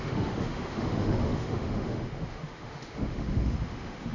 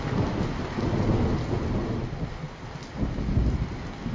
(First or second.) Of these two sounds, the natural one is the second